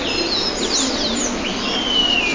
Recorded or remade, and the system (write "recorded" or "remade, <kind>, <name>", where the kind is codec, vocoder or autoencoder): recorded